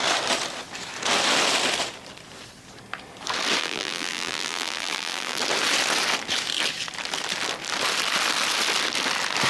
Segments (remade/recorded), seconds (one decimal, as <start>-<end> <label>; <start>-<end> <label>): 0.0-3.6 recorded; 3.6-5.4 remade; 5.4-9.5 recorded